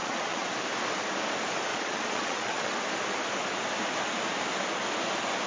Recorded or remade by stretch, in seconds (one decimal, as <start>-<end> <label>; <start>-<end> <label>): 0.0-0.5 remade; 0.5-1.7 recorded; 1.7-2.7 remade; 2.7-5.5 recorded